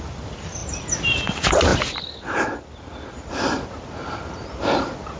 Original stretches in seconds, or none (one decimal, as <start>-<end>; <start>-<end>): 0.0-5.2